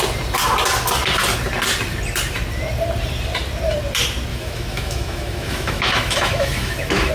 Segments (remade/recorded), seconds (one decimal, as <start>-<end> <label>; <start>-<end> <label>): 0.0-4.3 recorded; 4.3-7.1 remade